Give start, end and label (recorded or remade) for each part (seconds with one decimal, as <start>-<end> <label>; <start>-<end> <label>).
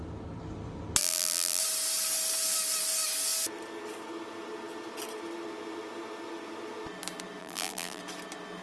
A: 0.0-1.0 recorded; 1.0-1.6 remade; 1.6-7.4 recorded; 7.4-8.0 remade; 8.0-8.6 recorded